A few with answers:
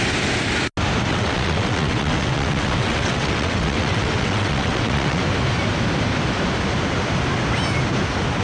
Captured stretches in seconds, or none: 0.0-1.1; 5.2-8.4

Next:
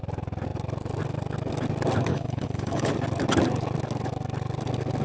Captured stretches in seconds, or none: 0.0-2.1; 2.9-5.0

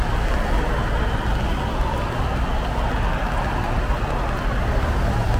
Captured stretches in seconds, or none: 0.0-5.4